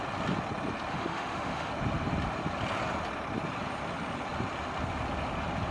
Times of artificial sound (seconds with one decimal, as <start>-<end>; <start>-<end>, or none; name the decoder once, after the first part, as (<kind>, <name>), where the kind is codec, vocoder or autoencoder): 0.9-1.7 (autoencoder, DAC-VAE)